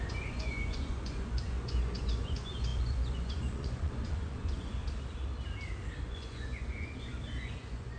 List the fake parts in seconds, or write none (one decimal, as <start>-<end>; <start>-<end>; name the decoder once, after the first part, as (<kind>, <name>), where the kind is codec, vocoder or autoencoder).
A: 0.0-4.8 (vocoder, Vocos); 6.0-8.0